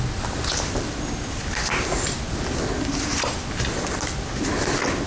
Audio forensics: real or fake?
real